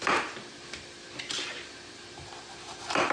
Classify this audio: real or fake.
real